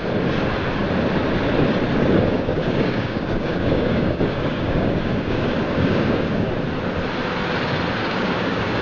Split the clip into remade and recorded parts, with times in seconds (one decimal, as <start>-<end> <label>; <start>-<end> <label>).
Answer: 0.0-2.0 recorded; 2.0-6.5 remade; 6.5-8.0 recorded; 8.0-8.8 remade